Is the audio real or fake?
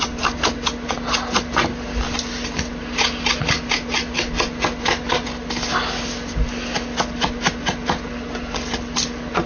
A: real